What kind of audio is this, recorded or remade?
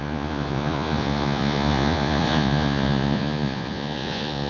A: remade